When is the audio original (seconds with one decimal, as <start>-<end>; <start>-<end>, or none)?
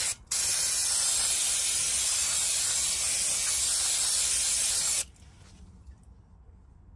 0.0-7.0